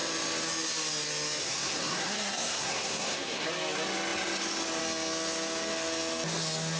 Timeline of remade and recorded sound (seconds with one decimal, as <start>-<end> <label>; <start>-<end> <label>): 0.0-1.4 recorded; 1.4-3.5 remade; 3.5-6.8 recorded

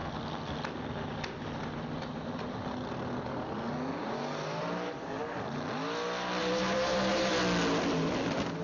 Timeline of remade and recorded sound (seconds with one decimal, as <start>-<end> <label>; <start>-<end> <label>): 0.0-6.4 recorded; 6.4-7.3 remade; 7.3-8.6 recorded

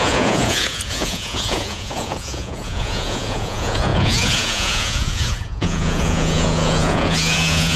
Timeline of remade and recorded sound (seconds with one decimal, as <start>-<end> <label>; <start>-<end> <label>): 0.0-7.8 remade

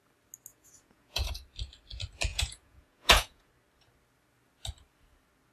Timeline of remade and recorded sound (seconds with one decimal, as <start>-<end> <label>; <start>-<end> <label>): 0.0-0.5 recorded; 0.5-1.3 remade; 1.3-2.3 recorded; 2.3-3.5 remade; 3.5-5.5 recorded